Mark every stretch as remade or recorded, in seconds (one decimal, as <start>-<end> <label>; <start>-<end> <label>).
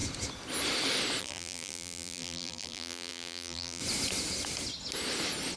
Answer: 0.0-1.2 recorded; 1.2-3.8 remade; 3.8-5.6 recorded